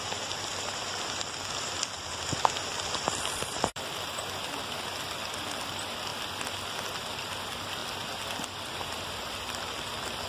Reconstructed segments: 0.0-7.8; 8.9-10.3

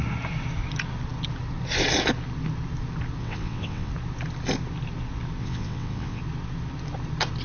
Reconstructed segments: 3.2-3.9; 5.4-6.2

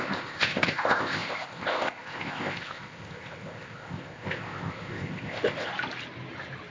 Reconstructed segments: 0.0-5.7